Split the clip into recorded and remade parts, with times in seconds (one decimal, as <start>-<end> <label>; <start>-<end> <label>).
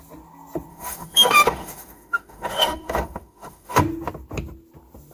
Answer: 0.0-0.7 recorded; 0.7-3.8 remade; 3.8-5.1 recorded